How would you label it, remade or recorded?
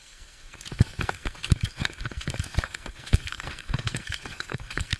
remade